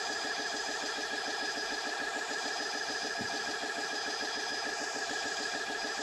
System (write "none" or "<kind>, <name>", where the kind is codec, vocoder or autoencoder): none